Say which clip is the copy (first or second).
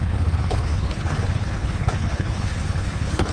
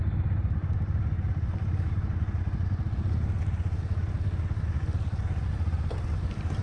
first